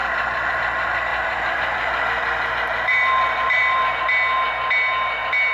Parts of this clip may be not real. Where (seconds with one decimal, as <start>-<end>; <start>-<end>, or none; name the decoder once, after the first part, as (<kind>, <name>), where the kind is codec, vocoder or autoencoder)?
0.0-0.5 (vocoder, BigVGAN v2); 1.1-4.0

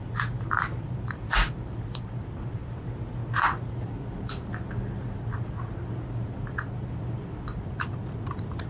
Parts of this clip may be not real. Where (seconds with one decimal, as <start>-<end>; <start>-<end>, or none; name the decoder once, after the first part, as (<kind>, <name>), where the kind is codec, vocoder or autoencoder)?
0.0-3.2 (vocoder, BigVGAN v2); 6.7-8.7

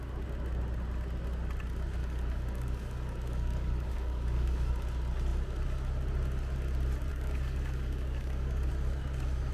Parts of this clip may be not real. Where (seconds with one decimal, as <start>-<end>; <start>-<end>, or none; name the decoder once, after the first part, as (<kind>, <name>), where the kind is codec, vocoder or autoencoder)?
2.0-4.7 (codec, DAC); 7.1-8.7

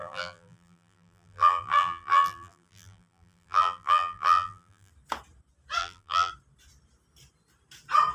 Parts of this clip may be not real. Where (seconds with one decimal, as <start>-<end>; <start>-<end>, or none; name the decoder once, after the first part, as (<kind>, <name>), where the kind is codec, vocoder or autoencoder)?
0.0-4.9 (vocoder, BigVGAN v2); 5.8-6.3